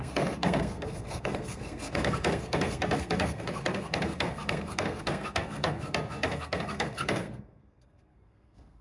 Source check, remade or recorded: remade